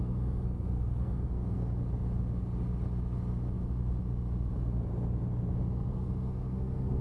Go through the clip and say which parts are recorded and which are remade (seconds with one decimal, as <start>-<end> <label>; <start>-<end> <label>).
0.0-1.7 remade; 1.7-5.9 recorded; 5.9-7.0 remade